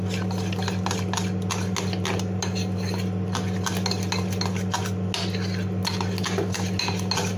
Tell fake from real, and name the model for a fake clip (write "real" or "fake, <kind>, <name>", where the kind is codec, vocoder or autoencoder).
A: real